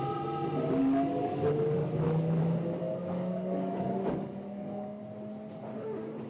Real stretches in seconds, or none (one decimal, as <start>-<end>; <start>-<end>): 0.0-0.8; 2.4-3.0; 5.0-6.3